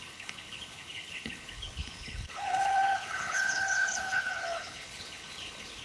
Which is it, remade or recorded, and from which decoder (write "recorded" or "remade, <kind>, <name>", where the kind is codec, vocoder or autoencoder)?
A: remade, codec, HILCodec